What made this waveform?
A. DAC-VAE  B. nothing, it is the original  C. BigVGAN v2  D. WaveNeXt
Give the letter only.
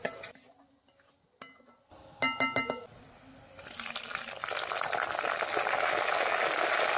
B